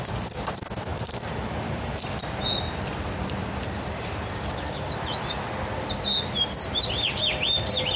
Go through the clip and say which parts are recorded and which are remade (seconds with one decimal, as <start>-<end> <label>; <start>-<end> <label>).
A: 0.0-0.9 recorded; 0.9-2.1 remade; 2.1-3.4 recorded; 3.4-4.1 remade; 4.1-8.0 recorded

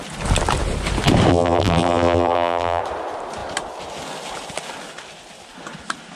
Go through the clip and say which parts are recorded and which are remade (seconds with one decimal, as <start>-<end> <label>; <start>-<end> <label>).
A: 0.0-1.3 recorded; 1.3-2.8 remade; 2.8-6.2 recorded